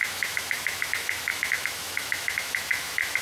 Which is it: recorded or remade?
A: remade